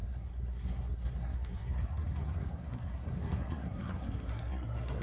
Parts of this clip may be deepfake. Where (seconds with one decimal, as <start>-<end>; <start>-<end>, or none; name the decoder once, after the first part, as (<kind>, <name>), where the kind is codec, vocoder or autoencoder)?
0.0-5.0 (codec, SNAC)